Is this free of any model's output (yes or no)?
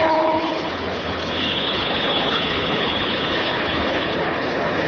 no